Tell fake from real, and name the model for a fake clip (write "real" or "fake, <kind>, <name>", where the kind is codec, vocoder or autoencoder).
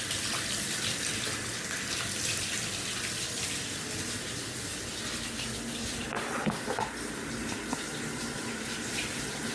real